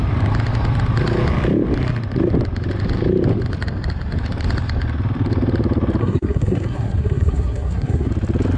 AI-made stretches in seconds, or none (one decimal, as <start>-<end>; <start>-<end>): 6.0-8.1